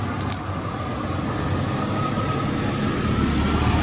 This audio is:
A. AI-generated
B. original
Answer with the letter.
B